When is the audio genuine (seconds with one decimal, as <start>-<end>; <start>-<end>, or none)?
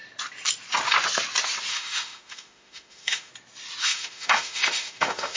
0.0-1.7; 3.3-3.8